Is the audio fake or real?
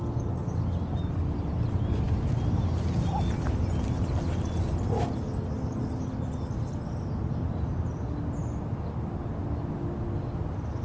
real